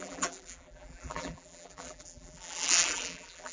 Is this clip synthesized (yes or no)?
yes